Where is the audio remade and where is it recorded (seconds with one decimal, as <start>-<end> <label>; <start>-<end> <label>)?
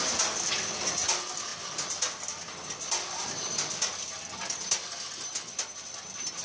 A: 0.0-6.4 recorded